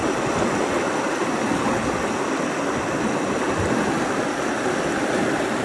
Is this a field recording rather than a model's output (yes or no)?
yes